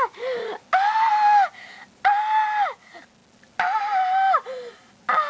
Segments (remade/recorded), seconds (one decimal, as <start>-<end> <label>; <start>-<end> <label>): 0.0-5.3 recorded